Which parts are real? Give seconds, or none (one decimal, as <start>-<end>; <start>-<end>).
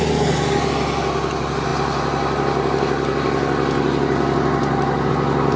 0.0-5.6